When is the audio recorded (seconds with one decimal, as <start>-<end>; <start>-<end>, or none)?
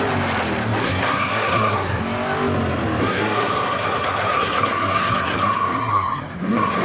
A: 0.0-0.8; 2.0-3.0